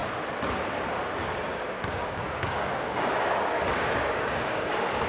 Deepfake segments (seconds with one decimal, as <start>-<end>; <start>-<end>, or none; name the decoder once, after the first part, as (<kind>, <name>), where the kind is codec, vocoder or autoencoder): 1.5-4.6 (codec, DAC)